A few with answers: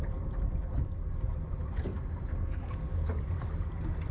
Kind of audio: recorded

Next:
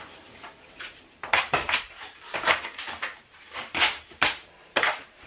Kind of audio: remade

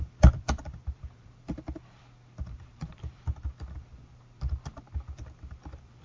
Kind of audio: remade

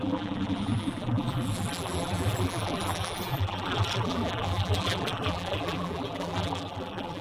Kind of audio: remade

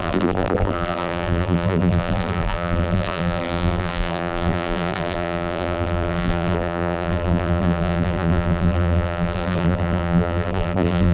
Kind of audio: remade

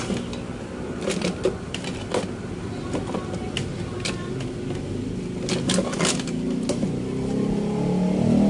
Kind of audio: recorded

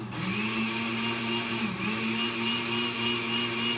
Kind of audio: recorded